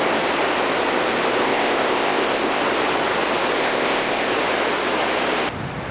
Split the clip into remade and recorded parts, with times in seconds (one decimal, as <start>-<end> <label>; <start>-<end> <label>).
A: 0.0-1.4 recorded; 1.4-2.6 remade; 2.6-3.6 recorded; 3.6-4.3 remade; 4.3-5.9 recorded